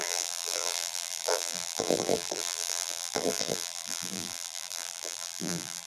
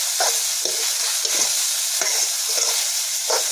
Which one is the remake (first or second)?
first